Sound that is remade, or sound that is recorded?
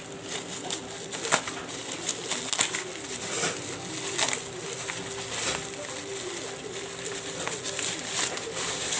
recorded